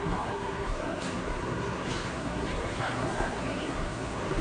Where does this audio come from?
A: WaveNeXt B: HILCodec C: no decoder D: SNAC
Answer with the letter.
D